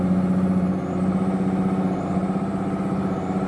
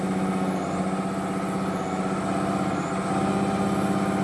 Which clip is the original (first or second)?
second